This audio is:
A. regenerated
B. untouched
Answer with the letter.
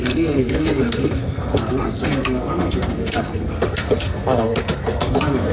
A